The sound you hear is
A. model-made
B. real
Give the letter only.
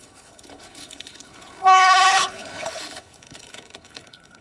A